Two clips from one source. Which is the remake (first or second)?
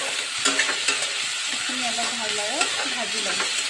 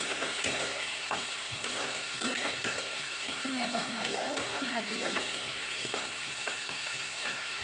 second